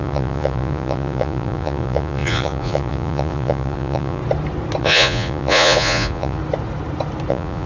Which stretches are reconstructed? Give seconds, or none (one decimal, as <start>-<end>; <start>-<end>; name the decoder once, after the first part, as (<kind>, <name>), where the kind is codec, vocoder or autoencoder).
0.0-4.2 (vocoder, Vocos); 4.8-6.4; 7.3-7.7